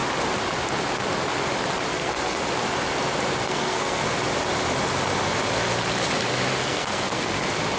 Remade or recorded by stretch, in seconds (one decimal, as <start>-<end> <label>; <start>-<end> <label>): 0.0-1.9 recorded; 1.9-2.4 remade; 2.4-3.4 recorded; 3.4-4.0 remade; 4.0-6.6 recorded; 6.6-7.3 remade; 7.3-7.8 recorded